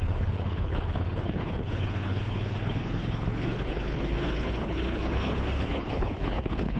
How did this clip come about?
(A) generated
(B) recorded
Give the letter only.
A